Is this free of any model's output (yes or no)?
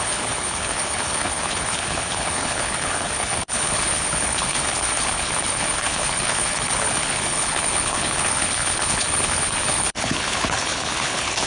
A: no